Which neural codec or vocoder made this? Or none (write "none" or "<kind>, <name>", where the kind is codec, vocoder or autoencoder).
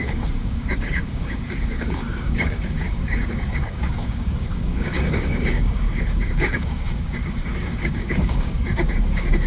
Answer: codec, DAC